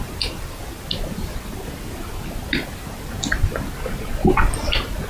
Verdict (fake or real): real